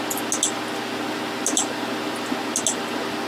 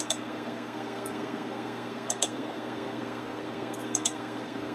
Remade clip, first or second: second